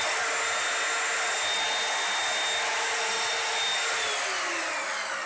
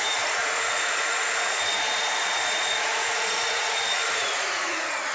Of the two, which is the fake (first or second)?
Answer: second